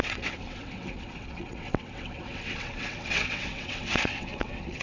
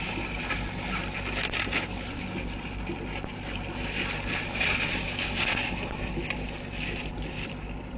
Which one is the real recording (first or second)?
second